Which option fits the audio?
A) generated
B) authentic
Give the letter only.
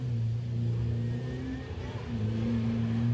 B